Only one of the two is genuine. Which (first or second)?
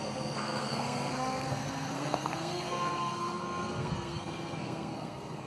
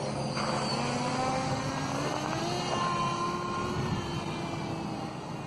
second